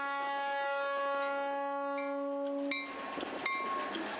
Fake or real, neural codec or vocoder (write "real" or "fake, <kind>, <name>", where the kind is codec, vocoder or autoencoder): real